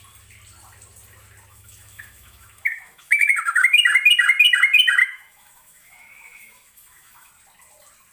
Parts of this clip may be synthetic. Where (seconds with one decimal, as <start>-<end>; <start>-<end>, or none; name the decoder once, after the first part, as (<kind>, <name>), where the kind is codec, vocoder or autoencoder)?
1.5-3.8 (autoencoder, DAC-VAE); 5.0-7.3